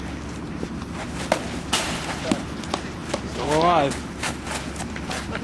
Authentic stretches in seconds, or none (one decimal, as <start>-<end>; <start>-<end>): 0.0-5.4